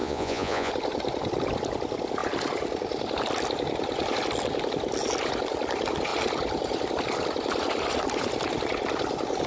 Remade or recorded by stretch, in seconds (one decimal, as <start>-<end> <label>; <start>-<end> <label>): 0.0-0.7 remade; 0.7-9.5 recorded